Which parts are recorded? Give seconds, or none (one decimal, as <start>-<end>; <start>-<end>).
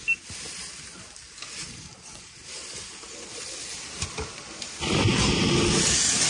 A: 0.0-6.3